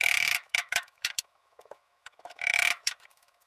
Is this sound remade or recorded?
remade